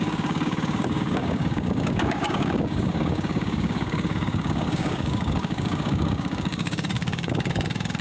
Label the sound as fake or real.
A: fake